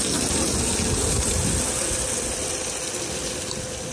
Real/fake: real